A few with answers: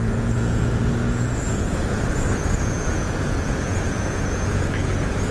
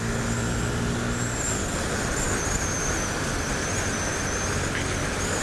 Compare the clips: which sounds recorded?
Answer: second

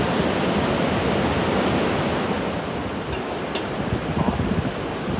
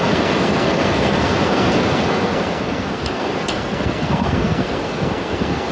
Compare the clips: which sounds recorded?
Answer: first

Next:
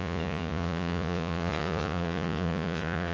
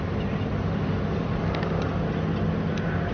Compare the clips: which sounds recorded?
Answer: second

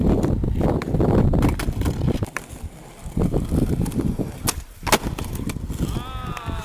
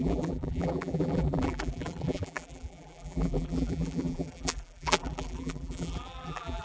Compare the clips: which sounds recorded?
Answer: first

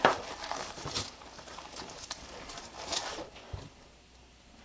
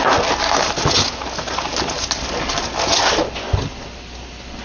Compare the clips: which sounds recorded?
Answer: second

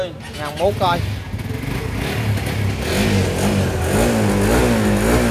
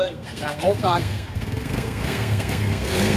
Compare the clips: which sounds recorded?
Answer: first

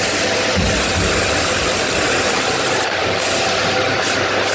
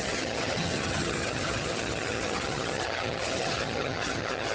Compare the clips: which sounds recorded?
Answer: first